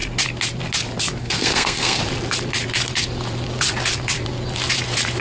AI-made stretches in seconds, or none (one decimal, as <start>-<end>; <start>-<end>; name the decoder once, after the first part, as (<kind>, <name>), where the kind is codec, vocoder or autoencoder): 1.2-2.0 (codec, SNAC)